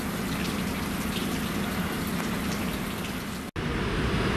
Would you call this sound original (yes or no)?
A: yes